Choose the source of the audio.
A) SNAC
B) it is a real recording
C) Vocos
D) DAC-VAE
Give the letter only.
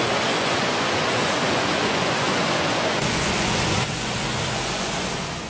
C